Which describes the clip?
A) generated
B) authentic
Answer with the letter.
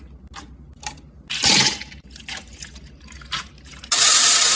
B